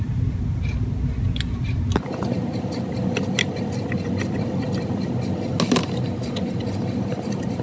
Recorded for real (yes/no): yes